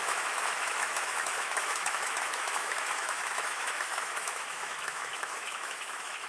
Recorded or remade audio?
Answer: remade